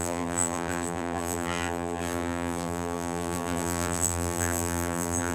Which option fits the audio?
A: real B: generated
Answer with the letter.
B